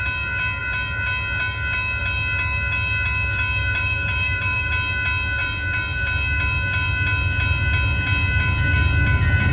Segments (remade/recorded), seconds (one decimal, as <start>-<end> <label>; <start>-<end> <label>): 0.0-3.6 recorded; 3.6-4.7 remade; 4.7-9.5 recorded